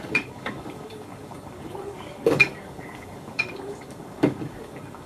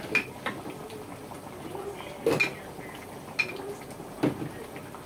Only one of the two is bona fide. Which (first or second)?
second